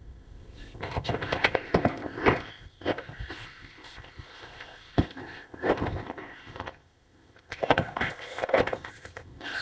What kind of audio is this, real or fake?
fake